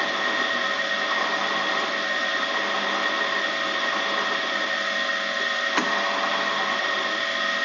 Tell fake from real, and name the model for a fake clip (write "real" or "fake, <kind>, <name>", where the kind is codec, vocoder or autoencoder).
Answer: real